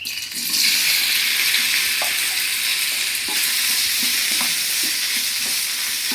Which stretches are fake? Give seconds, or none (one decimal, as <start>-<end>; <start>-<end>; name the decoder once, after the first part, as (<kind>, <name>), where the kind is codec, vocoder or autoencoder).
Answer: 2.7-4.2 (vocoder, BigVGAN v2)